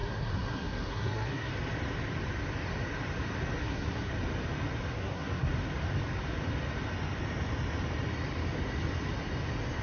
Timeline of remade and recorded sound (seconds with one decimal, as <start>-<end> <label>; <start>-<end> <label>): 0.0-1.5 remade; 1.5-3.6 recorded; 3.6-4.1 remade; 4.1-4.9 recorded; 4.9-5.5 remade; 5.5-9.8 recorded